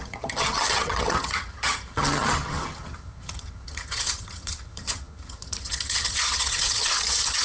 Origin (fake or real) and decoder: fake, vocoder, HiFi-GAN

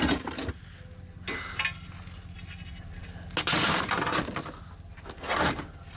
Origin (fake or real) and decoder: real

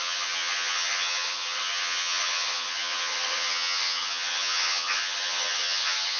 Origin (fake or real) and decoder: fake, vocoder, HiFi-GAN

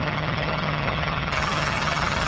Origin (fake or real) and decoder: fake, vocoder, HiFi-GAN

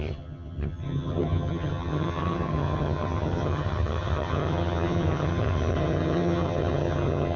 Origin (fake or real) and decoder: fake, vocoder, HiFi-GAN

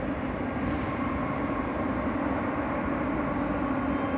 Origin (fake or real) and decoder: real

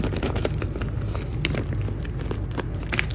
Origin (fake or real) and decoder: real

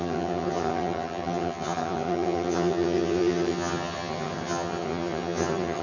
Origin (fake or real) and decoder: fake, vocoder, HiFi-GAN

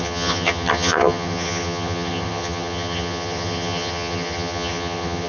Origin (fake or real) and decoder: fake, vocoder, HiFi-GAN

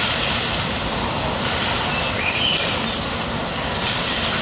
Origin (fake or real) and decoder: real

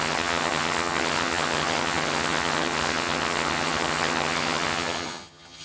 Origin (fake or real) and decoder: fake, vocoder, HiFi-GAN